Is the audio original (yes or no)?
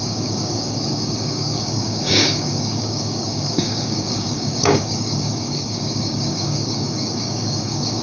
no